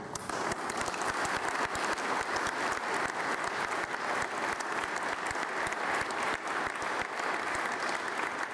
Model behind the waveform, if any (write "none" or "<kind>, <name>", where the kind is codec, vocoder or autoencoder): none